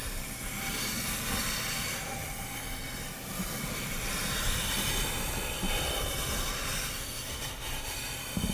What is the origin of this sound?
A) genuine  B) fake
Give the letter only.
A